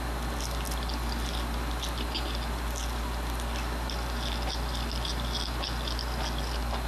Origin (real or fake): real